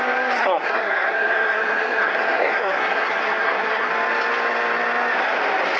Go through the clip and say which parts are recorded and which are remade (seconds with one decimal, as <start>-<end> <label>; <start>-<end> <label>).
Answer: 0.0-0.4 recorded; 0.4-3.9 remade; 3.9-5.8 recorded